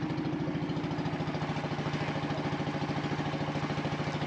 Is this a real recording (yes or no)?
yes